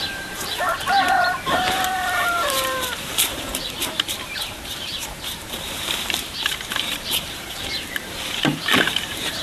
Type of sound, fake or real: fake